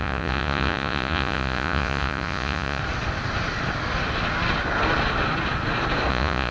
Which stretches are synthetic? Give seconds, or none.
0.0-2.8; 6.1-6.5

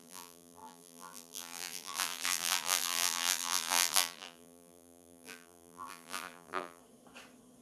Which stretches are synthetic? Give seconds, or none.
0.0-6.8

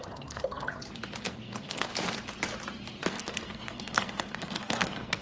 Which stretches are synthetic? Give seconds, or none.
0.0-0.7; 1.2-1.9; 3.0-5.2

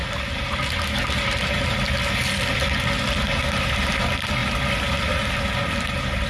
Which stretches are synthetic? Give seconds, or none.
none

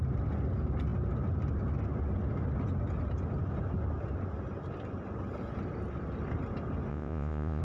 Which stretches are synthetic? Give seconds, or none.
6.9-7.6

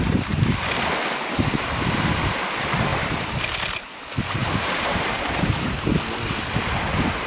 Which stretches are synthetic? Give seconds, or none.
2.9-3.4; 4.4-5.9

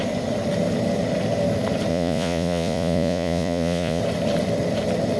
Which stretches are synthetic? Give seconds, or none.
1.9-4.0

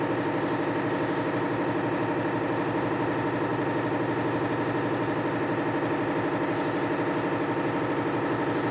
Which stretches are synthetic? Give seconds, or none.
none